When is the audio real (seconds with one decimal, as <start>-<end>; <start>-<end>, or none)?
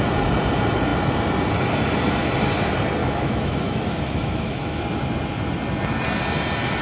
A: 0.0-3.0; 4.8-6.8